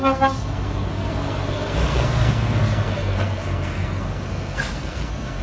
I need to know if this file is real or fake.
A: fake